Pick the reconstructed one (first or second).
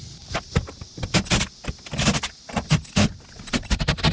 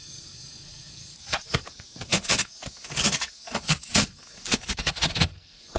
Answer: second